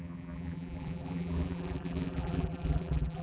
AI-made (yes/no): yes